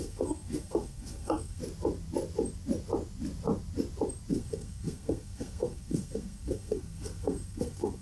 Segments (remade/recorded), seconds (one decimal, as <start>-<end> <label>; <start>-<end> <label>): 0.0-1.6 remade; 1.6-4.3 recorded; 4.3-8.0 remade

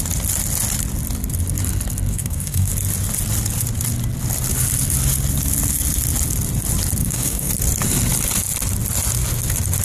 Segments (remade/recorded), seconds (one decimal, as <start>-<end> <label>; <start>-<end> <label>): 0.0-2.1 recorded; 2.1-2.7 remade; 2.7-7.0 recorded; 7.0-7.5 remade; 7.5-9.8 recorded